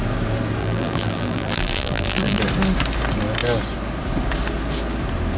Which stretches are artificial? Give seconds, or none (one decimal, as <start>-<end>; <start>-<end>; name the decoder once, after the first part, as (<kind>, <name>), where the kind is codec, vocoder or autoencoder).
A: 0.6-2.4 (vocoder, BigVGAN v2)